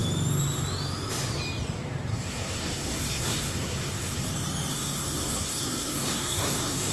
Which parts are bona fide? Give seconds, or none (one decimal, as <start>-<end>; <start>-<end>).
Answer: 0.0-2.1; 4.3-4.7